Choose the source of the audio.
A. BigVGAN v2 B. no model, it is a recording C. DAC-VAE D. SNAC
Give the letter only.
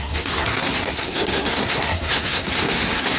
D